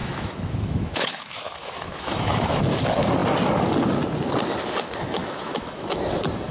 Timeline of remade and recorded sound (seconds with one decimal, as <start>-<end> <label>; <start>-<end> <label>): 0.0-2.6 remade; 2.6-5.2 recorded; 5.2-6.0 remade; 6.0-6.5 recorded